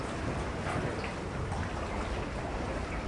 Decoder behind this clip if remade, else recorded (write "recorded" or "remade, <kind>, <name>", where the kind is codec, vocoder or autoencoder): recorded